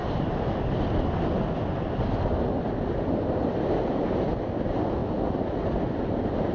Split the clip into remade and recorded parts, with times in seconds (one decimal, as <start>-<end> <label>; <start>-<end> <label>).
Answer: 0.0-6.5 recorded